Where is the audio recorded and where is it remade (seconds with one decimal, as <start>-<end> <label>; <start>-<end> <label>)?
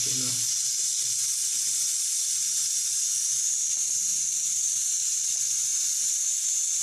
0.0-1.2 recorded; 1.2-3.0 remade; 3.0-6.8 recorded